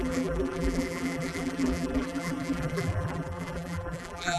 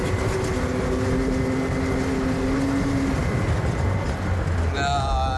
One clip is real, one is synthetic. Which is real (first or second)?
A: second